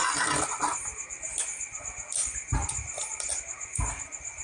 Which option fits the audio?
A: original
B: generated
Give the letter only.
A